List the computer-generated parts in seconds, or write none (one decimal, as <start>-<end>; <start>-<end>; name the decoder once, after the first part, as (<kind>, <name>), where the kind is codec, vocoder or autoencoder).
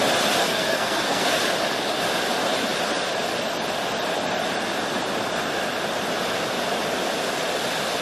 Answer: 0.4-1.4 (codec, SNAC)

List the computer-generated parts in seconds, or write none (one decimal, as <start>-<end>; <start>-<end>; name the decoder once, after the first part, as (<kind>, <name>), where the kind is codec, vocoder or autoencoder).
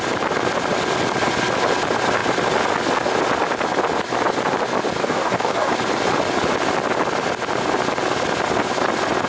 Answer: 5.0-5.7 (codec, DAC)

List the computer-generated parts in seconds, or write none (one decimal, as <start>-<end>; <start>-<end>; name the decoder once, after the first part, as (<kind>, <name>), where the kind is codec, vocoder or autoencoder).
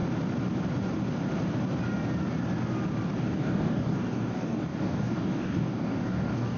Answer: 3.2-6.6 (codec, DAC)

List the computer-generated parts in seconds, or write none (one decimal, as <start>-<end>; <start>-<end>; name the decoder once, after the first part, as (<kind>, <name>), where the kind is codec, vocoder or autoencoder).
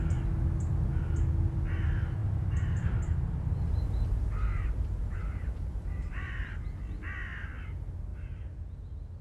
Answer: 2.2-6.6 (vocoder, BigVGAN v2)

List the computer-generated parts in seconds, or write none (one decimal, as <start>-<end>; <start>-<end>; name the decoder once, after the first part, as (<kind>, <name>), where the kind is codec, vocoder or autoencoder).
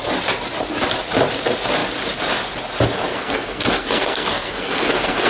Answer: 3.1-5.3 (codec, SNAC)